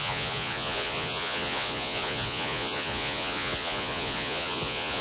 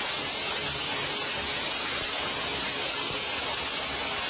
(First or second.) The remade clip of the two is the first